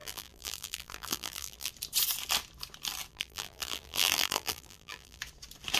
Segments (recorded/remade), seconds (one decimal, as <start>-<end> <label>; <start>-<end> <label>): 0.0-1.7 remade; 1.7-3.1 recorded; 3.1-5.2 remade; 5.2-5.8 recorded